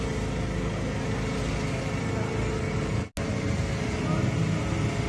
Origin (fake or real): real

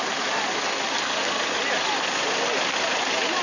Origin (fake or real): real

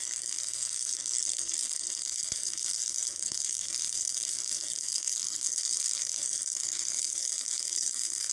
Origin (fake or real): fake